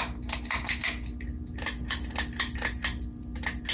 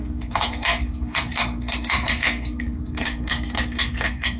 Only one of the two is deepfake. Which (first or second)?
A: second